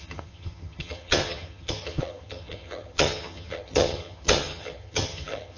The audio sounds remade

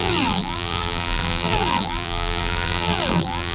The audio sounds remade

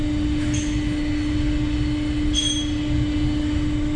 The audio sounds recorded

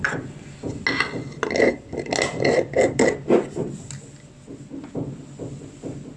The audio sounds recorded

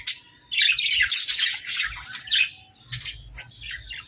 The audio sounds recorded